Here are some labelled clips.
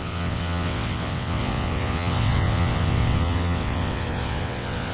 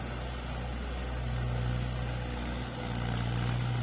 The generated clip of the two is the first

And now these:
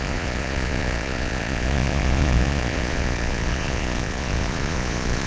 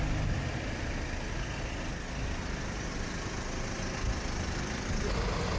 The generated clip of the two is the first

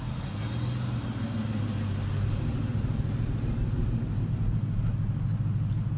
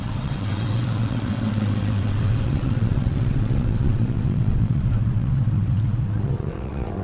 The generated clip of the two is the second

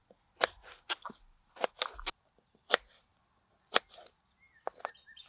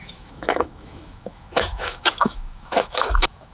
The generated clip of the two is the second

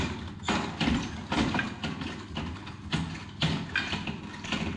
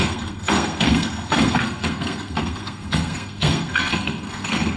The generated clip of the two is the second